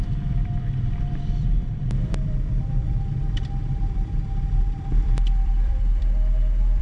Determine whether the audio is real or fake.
fake